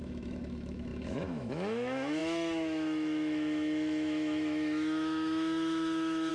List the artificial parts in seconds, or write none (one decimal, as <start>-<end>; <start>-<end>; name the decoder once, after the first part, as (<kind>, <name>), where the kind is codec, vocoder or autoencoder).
0.0-6.3 (autoencoder, DAC-VAE)